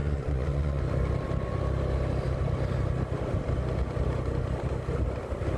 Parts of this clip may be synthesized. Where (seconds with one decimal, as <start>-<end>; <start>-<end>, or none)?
0.0-0.8